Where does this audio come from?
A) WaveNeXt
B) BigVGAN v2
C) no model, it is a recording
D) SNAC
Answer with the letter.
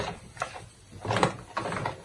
C